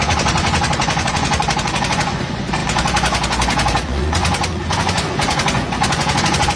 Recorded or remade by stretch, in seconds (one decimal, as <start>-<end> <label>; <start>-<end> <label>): 0.0-6.6 remade